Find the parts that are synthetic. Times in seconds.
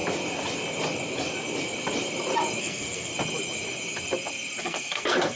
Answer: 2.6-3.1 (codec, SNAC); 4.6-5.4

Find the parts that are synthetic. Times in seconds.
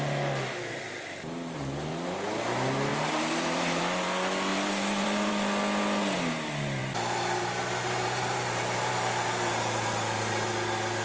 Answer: 2.9-3.8 (vocoder, BigVGAN v2); 4.5-5.3; 6.8-10.5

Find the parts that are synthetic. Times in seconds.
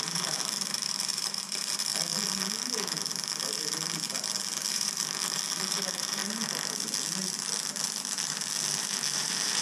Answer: 0.0-1.9 (vocoder, BigVGAN v2); 4.7-6.2; 8.8-9.6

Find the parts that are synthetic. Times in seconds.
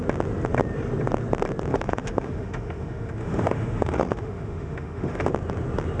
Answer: 1.7-5.3 (autoencoder, DAC-VAE)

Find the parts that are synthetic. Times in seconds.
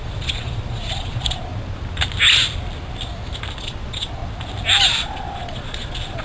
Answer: 0.0-1.5 (vocoder, Vocos); 3.6-4.2; 4.9-6.2